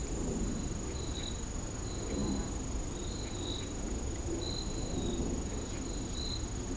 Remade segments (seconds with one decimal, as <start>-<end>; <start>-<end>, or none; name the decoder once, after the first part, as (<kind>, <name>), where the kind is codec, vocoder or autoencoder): none